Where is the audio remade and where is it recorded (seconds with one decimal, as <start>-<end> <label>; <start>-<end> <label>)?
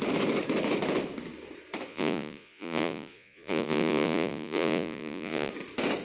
0.0-1.9 recorded; 1.9-5.5 remade; 5.5-6.0 recorded